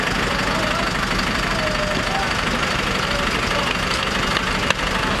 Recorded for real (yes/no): yes